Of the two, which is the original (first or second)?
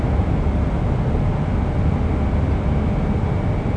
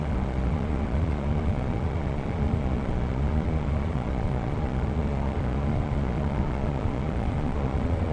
first